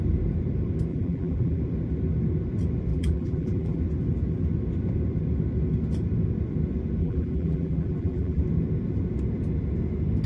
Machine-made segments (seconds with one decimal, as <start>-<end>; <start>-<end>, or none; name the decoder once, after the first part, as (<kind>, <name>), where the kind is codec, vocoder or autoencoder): 0.9-1.6 (vocoder, BigVGAN v2); 2.9-3.8; 7.0-8.4